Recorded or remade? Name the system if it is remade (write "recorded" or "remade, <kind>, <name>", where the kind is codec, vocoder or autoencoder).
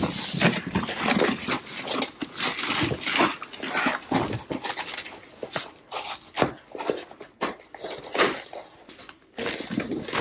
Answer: recorded